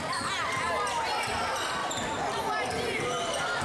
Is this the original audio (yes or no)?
yes